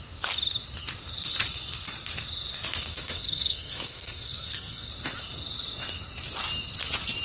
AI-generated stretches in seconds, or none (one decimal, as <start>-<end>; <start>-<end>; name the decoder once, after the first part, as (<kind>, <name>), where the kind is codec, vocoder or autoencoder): 2.9-4.9 (codec, SNAC)